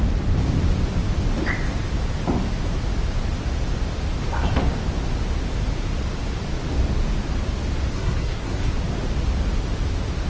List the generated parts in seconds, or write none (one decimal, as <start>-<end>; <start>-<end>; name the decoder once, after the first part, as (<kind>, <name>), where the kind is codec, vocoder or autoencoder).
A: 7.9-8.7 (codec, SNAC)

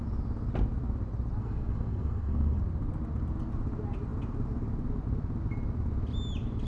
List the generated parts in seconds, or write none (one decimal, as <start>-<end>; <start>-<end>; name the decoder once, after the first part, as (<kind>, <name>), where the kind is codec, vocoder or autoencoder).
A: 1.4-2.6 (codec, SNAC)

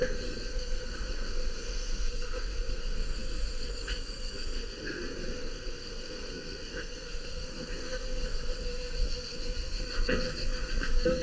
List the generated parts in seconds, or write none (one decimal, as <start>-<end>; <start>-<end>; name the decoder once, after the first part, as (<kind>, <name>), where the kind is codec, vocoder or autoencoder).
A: 0.0-11.2 (codec, SNAC)

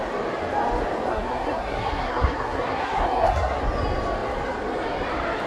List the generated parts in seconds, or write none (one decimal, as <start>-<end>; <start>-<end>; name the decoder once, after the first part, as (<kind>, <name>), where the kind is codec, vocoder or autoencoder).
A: 1.1-3.6 (codec, SNAC)